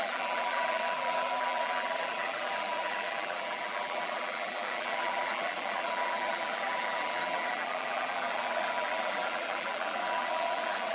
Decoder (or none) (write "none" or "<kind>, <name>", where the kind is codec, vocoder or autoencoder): vocoder, BigVGAN v2